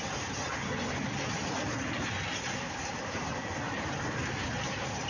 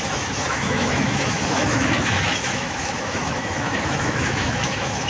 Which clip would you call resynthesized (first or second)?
second